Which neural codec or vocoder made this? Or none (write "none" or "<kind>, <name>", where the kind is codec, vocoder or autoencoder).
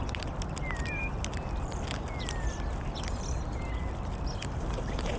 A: none